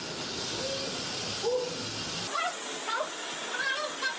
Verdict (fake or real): real